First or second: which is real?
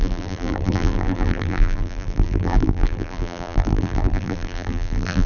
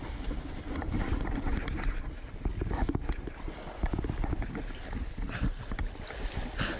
second